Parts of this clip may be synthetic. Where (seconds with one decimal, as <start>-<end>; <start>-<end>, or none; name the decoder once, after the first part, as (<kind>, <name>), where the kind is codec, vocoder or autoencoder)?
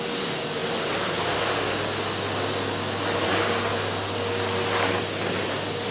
none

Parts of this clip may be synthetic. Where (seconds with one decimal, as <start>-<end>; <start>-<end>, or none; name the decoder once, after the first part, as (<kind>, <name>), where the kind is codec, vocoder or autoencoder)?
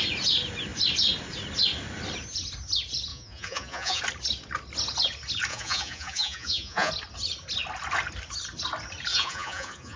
3.1-4.0 (vocoder, Vocos); 5.5-6.9; 9.1-10.0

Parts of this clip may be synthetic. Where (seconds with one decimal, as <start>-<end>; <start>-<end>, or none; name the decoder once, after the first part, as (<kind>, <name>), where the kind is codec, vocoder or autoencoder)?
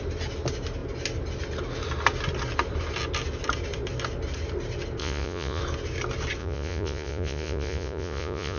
5.0-5.6 (vocoder, Vocos); 6.4-8.6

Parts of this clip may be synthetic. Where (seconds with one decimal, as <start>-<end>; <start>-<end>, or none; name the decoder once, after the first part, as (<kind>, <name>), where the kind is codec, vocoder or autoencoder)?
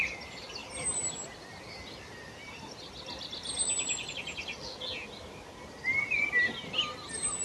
none